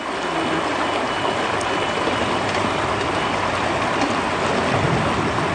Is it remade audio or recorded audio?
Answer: recorded